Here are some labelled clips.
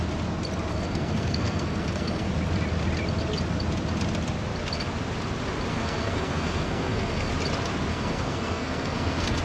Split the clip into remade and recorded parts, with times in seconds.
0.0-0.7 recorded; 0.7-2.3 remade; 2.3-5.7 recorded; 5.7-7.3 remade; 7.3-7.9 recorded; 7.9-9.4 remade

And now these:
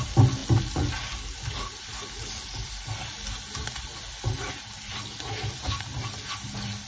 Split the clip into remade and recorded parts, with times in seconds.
0.0-6.9 recorded

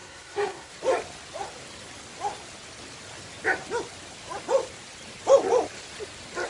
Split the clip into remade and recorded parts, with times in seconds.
0.0-0.7 remade; 0.7-6.5 recorded

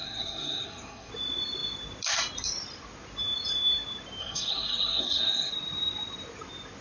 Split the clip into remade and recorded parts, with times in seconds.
0.0-1.1 remade; 1.1-4.2 recorded; 4.2-5.5 remade; 5.5-6.8 recorded